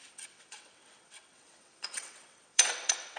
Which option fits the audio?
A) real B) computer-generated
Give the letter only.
B